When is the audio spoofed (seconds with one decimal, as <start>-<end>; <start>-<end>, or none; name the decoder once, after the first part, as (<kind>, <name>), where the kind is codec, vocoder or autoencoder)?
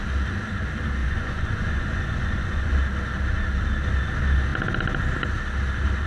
1.0-2.7 (vocoder, Vocos)